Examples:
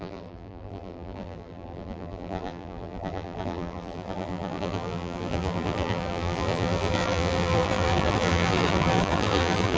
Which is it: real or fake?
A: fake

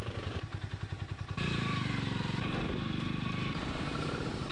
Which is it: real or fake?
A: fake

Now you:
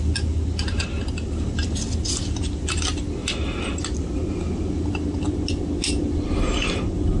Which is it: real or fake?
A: real